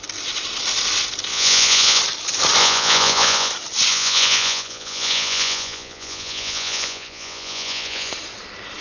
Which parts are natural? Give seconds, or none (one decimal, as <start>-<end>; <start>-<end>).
0.0-1.3; 2.0-2.6; 3.5-3.9; 8.1-8.8